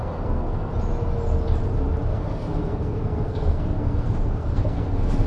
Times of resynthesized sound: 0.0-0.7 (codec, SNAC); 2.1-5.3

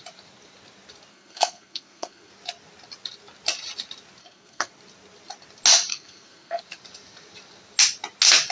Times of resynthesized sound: 1.1-2.3 (codec, SNAC); 4.2-4.7; 5.9-6.6

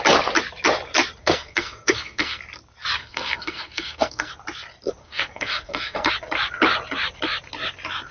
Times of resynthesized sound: 1.2-2.4 (codec, SNAC); 3.0-4.3; 5.0-6.1

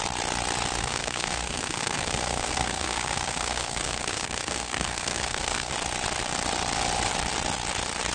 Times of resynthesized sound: 0.8-5.7 (codec, SNAC)

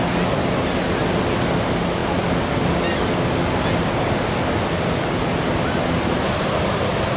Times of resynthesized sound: none

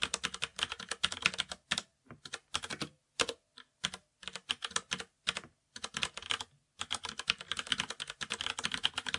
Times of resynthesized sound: none

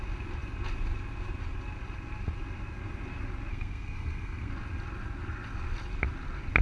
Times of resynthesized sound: 3.5-4.5 (codec, SNAC)